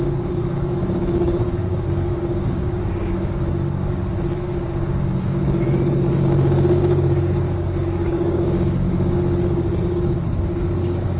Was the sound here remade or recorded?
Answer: remade